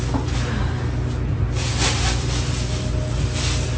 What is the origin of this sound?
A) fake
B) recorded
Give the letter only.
B